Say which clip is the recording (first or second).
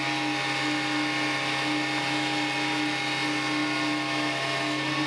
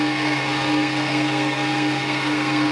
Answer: first